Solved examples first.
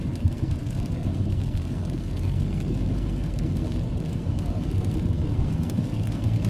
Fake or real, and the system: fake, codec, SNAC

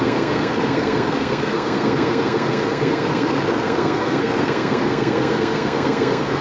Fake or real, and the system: fake, codec, SNAC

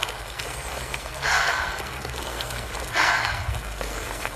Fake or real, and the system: fake, codec, SNAC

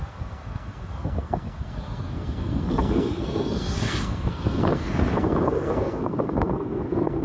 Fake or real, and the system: fake, codec, SNAC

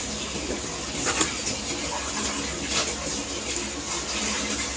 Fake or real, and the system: real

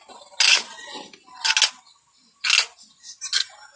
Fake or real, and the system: real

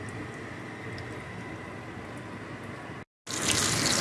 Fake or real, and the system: real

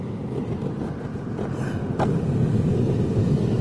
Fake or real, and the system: real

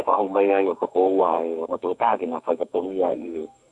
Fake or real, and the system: fake, codec, SNAC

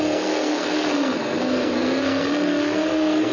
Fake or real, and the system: fake, codec, SNAC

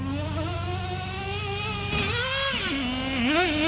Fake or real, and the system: real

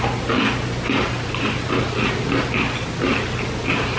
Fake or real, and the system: real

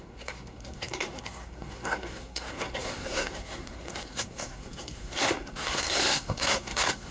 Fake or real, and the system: fake, codec, SNAC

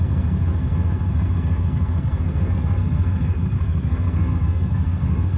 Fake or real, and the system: fake, codec, SNAC